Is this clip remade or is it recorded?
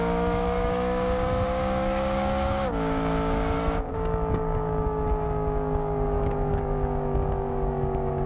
remade